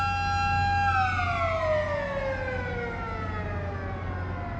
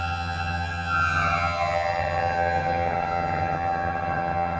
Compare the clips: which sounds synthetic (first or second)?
second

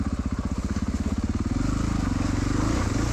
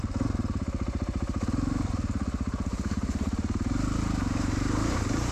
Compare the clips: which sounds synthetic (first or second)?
second